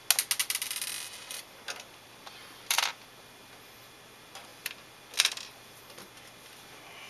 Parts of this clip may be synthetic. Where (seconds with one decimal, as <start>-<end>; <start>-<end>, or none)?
0.4-3.8; 4.5-5.8